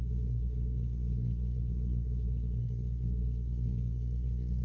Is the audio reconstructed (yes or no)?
yes